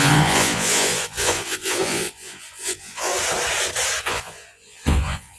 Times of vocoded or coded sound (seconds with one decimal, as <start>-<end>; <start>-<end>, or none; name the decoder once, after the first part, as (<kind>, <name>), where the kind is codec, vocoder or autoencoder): 0.0-3.1 (vocoder, Vocos); 4.0-5.4